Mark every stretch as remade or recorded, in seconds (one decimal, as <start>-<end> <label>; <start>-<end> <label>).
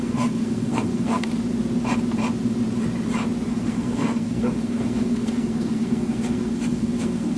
0.0-1.3 remade; 1.3-3.5 recorded; 3.5-7.4 remade